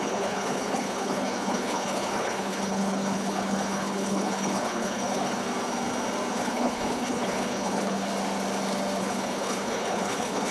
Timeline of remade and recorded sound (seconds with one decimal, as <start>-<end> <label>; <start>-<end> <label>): 0.0-5.5 remade; 5.5-6.3 recorded; 6.3-8.1 remade; 8.1-9.0 recorded; 9.0-10.5 remade